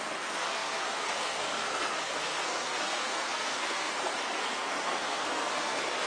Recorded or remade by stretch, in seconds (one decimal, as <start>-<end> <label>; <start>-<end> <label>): 0.0-6.1 remade